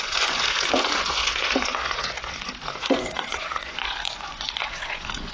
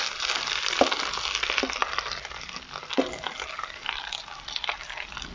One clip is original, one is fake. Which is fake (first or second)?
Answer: first